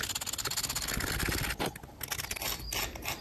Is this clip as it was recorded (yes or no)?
yes